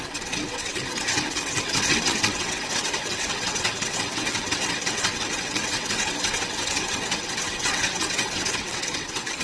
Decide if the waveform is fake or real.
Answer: fake